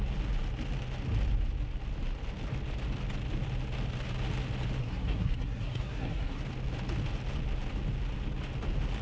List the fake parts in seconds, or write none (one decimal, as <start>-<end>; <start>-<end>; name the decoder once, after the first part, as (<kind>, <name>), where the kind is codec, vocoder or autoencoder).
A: 4.8-6.4 (codec, SNAC)